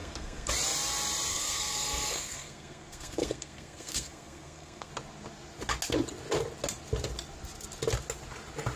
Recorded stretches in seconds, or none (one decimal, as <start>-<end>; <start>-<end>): 0.5-1.3; 4.9-8.8